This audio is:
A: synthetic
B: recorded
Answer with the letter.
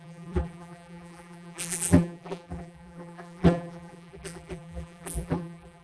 A